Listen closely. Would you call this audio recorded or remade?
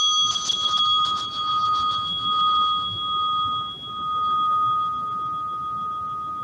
recorded